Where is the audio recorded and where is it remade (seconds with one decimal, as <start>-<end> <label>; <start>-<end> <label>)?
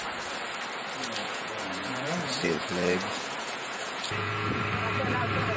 0.0-1.2 recorded; 1.2-4.6 remade; 4.6-5.6 recorded